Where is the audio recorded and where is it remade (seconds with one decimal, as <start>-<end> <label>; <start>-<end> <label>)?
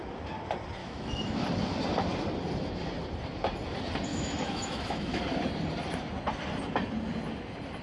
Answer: 0.0-0.8 recorded; 0.8-1.4 remade; 1.4-4.1 recorded; 4.1-5.2 remade; 5.2-7.8 recorded